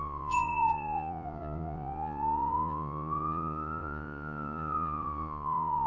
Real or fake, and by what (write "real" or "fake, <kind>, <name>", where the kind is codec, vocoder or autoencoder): fake, vocoder, Vocos